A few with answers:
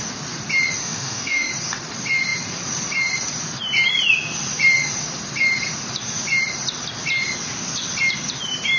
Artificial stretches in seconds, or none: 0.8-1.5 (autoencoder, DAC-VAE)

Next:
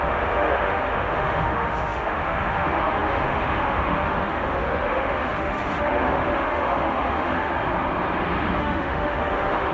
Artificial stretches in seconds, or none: 0.0-7.5 (autoencoder, DAC-VAE); 8.6-9.7

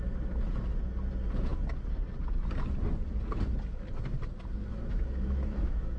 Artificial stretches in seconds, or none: 4.7-6.0 (autoencoder, DAC-VAE)

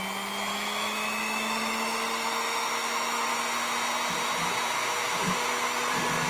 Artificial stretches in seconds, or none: 0.5-3.3 (autoencoder, DAC-VAE)